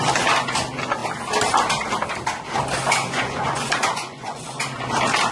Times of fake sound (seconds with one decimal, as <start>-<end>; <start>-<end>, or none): 3.0-4.6